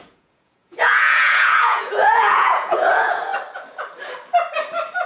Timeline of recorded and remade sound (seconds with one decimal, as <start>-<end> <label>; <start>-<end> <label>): 0.0-3.3 remade; 3.3-5.1 recorded